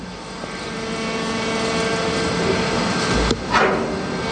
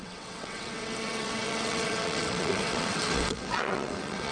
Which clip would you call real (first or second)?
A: first